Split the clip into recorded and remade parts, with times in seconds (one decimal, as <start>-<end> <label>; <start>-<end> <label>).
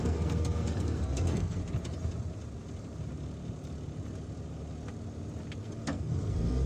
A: 0.0-1.6 remade; 1.6-5.6 recorded; 5.6-6.7 remade